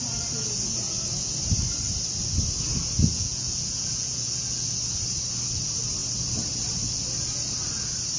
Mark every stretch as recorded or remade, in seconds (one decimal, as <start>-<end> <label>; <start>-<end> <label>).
0.0-3.1 recorded; 3.1-4.7 remade; 4.7-8.2 recorded